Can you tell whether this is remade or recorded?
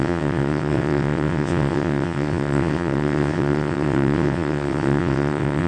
remade